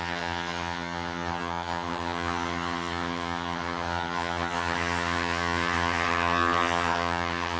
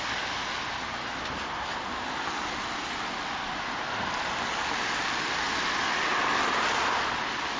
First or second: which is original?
second